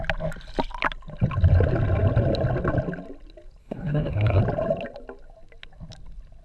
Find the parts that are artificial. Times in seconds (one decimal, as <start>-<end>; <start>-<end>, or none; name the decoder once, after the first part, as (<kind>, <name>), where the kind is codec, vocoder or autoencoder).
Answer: 3.6-4.4 (codec, SNAC)